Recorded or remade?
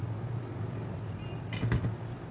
recorded